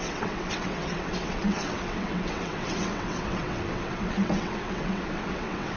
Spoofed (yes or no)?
yes